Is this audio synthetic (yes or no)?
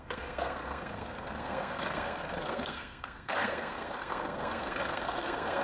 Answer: yes